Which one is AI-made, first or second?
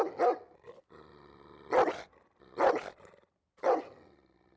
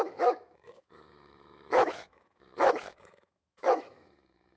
second